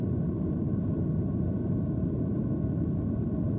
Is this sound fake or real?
fake